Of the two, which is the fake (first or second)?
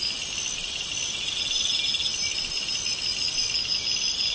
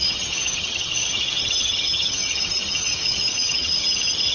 second